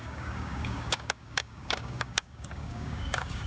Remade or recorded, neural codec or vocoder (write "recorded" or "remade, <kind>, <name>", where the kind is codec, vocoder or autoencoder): remade, codec, DAC